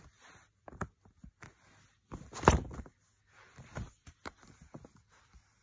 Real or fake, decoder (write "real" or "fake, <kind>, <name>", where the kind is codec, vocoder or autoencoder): real